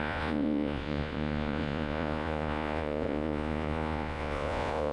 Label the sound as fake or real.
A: fake